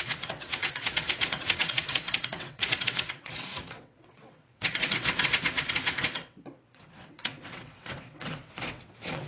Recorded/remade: remade